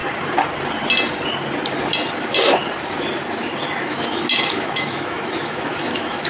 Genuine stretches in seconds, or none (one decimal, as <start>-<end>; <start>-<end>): 0.0-3.8